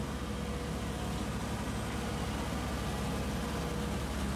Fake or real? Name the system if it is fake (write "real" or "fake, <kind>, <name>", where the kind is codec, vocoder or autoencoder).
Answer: real